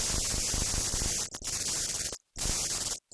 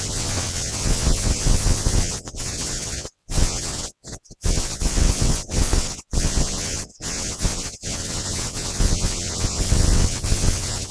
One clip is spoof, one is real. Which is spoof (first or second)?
second